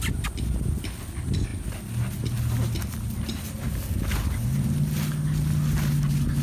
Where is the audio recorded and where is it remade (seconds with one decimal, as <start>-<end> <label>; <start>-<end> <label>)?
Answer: 0.0-6.4 recorded